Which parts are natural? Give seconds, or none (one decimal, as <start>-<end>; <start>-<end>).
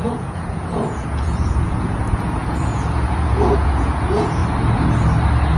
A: 4.4-5.6